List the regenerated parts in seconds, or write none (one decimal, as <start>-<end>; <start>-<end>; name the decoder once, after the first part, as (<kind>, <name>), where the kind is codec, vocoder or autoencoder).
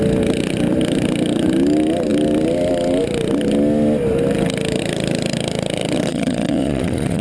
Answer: 6.1-7.2 (vocoder, Vocos)